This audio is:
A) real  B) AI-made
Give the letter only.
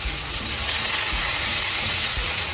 B